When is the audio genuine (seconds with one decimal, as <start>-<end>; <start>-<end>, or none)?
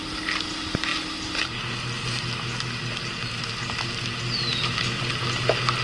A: 0.0-5.8